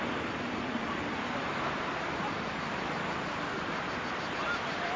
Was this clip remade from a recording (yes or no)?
no